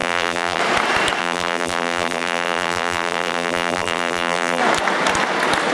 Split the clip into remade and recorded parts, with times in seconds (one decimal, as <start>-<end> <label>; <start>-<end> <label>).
0.0-0.6 remade; 0.6-1.2 recorded; 1.2-4.6 remade; 4.6-5.7 recorded